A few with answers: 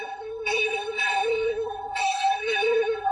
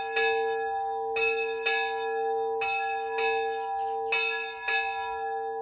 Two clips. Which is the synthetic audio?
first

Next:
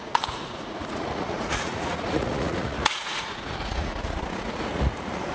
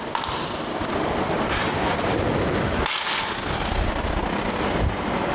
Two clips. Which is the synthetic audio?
first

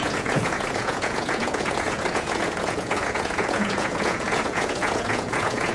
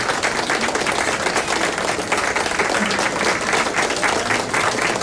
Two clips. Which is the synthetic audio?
first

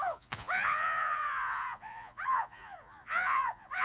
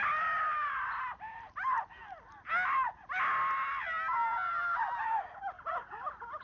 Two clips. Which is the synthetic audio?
first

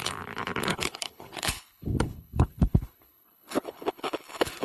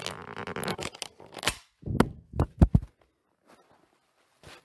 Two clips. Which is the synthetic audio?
first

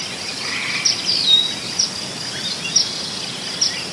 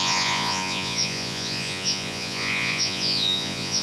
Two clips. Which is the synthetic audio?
second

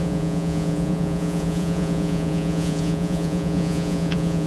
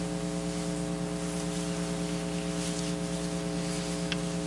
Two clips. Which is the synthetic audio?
first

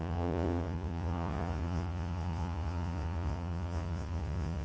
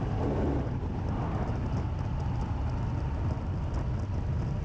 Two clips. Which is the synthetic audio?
first